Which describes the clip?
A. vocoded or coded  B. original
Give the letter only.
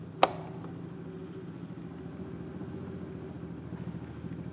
B